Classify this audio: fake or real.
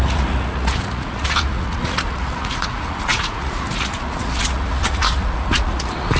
fake